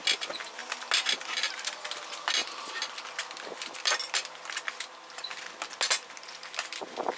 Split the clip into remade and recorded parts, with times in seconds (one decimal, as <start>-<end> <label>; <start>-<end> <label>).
0.0-7.2 recorded